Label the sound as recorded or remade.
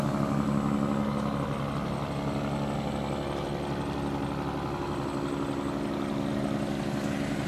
recorded